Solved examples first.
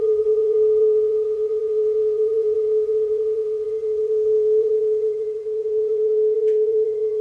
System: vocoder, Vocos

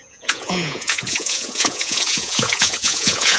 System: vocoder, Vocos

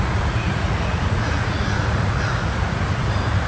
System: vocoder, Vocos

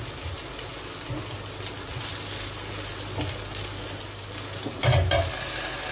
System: none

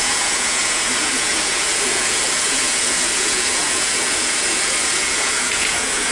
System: vocoder, Vocos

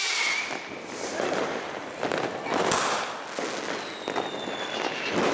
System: none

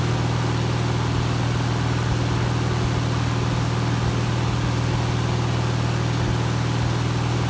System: none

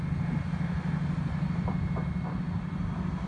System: none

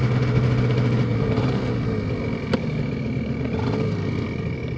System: none